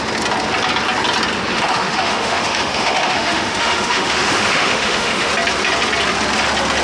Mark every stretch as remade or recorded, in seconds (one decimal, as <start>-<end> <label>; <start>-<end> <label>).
0.0-1.5 recorded; 1.5-5.3 remade; 5.3-6.8 recorded